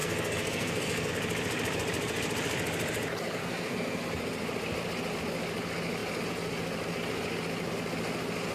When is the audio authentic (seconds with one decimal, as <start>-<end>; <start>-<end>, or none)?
1.1-3.4; 4.0-8.5